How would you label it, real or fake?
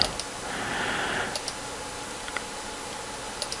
real